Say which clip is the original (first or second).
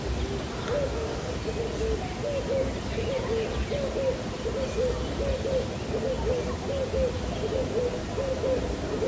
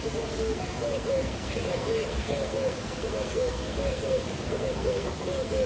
first